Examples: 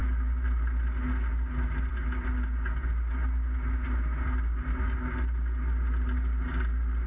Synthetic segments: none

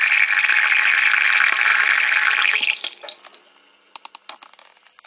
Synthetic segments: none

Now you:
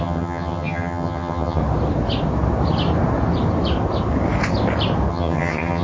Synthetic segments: 0.0-1.6 (vocoder, HiFi-GAN); 5.1-5.8

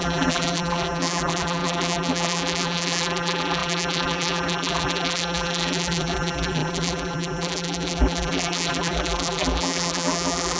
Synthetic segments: 0.0-10.6 (vocoder, BigVGAN v2)